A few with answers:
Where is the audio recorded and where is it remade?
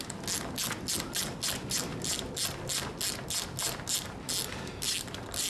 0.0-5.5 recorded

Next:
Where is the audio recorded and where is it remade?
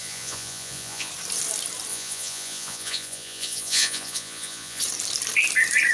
0.0-1.1 remade; 1.1-1.9 recorded; 1.9-4.8 remade; 4.8-5.9 recorded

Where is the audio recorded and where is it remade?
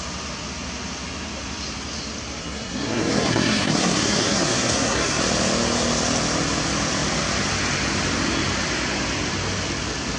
0.0-2.4 recorded; 2.4-5.2 remade; 5.2-10.2 recorded